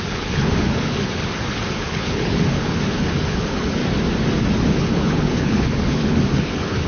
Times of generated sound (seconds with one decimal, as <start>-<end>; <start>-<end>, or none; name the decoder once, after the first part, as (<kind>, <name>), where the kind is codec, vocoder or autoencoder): 0.0-3.8 (codec, HILCodec); 4.7-6.9